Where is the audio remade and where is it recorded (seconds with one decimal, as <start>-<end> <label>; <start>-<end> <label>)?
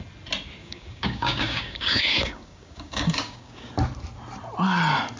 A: 0.0-0.6 recorded; 0.6-3.7 remade; 3.7-5.2 recorded